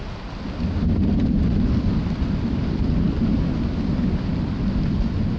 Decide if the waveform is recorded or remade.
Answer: recorded